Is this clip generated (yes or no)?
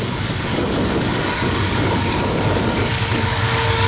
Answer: yes